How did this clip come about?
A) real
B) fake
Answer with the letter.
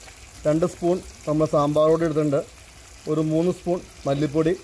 A